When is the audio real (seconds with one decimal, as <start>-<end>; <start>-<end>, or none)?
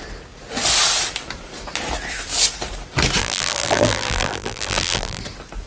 0.0-3.2; 5.2-5.7